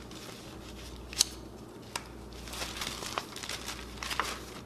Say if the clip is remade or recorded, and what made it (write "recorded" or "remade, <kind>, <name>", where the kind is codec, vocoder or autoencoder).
recorded